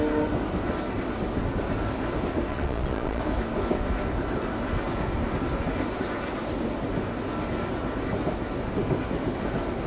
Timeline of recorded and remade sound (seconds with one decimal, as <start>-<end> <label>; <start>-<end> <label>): 0.0-2.5 recorded; 2.5-3.2 remade; 3.2-9.9 recorded